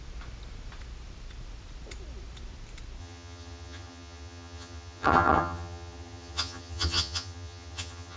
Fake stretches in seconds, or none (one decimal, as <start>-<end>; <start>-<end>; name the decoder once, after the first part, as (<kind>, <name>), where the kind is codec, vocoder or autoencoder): 3.0-8.2 (vocoder, HiFi-GAN)